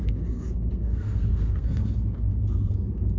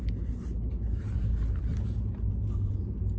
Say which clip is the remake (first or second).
first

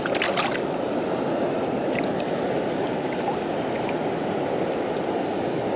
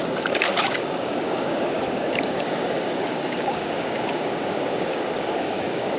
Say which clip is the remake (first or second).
second